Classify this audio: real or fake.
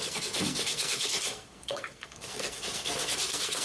fake